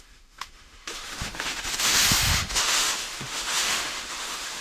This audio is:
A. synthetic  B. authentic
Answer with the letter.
A